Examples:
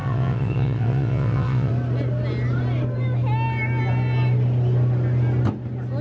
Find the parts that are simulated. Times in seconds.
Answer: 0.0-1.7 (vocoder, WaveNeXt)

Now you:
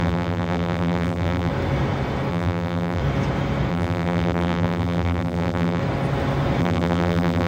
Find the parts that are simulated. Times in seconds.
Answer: 0.0-1.5 (vocoder, BigVGAN v2); 2.3-3.0; 3.7-5.8; 6.6-7.5